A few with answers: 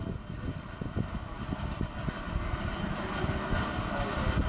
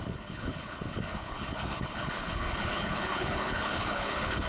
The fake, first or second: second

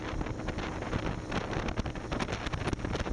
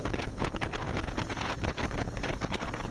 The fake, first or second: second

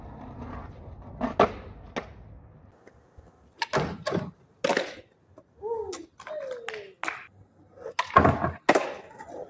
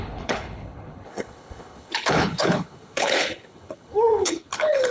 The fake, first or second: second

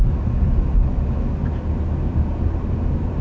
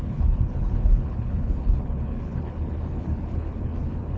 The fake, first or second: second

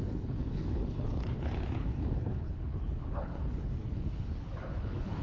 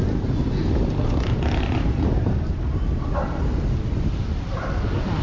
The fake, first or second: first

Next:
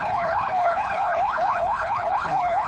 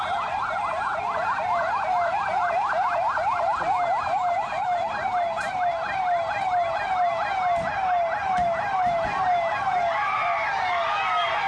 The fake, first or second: first